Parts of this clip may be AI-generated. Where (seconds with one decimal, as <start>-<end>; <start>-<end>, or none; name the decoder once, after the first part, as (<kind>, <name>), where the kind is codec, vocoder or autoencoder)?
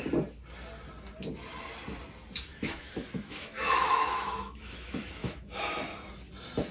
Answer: 2.5-6.1 (autoencoder, DAC-VAE)